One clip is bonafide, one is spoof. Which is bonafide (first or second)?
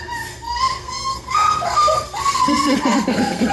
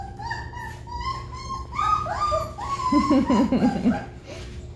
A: second